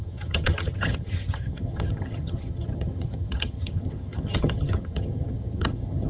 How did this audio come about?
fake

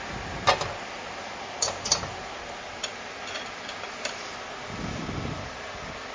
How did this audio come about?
real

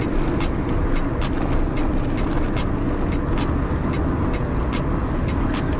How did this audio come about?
real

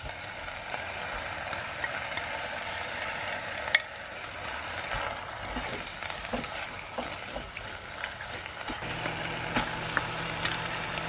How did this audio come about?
real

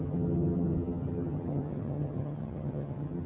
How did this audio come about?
fake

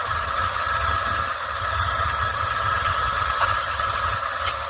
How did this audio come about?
fake